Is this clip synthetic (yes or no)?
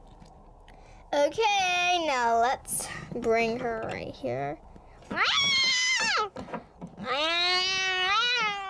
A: no